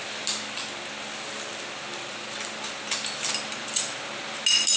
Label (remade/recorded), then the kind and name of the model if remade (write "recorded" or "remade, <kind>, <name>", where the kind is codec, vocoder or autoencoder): recorded